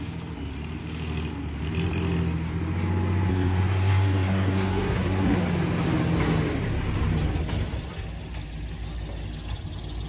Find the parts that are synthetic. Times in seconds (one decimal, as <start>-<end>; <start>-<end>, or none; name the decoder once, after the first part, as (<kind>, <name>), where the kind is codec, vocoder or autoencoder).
3.3-5.4 (codec, SNAC)